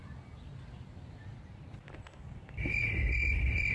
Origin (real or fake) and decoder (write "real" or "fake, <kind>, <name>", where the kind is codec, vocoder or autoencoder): real